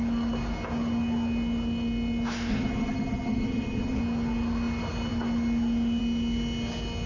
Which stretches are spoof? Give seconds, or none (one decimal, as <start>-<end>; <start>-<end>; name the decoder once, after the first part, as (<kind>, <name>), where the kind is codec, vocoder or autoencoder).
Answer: 2.5-4.0 (vocoder, HiFi-GAN)